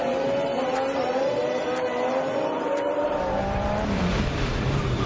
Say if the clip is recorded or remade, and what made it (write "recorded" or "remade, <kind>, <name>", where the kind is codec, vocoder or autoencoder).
remade, vocoder, BigVGAN v2